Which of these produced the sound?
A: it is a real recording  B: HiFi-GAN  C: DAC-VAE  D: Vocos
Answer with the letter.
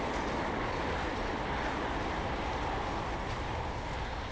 A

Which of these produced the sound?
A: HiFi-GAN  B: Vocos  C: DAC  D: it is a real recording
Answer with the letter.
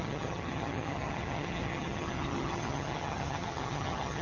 A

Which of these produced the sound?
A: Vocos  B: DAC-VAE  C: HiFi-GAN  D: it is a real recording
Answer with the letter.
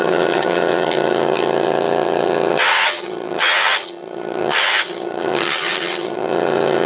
C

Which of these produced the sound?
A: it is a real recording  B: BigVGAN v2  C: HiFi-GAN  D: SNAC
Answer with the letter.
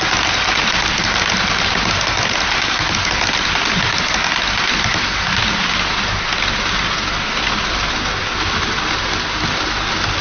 A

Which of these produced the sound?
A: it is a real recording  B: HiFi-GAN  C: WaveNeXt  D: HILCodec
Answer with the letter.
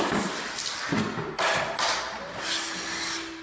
A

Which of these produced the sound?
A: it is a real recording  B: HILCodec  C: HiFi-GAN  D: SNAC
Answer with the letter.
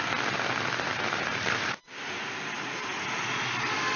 A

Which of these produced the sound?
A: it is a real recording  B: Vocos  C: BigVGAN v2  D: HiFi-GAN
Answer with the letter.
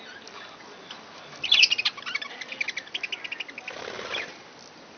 A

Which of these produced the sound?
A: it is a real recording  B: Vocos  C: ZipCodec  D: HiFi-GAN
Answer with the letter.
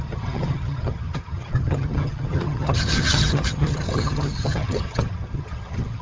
D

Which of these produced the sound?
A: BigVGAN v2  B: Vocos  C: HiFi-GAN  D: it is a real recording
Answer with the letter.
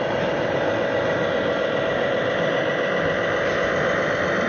D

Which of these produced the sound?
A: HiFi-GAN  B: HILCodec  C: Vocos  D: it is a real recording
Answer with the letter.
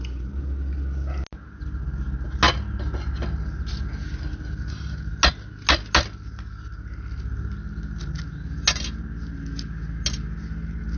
D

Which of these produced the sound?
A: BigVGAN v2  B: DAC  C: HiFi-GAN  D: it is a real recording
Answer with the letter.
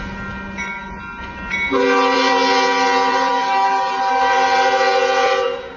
D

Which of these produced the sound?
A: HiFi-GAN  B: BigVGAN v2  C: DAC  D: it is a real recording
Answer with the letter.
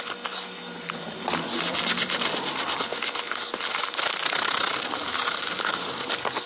D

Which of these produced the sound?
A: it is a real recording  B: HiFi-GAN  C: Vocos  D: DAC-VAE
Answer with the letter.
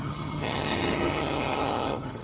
B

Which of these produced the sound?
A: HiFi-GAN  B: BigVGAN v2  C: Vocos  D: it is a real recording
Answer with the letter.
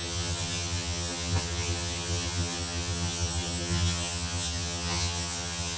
A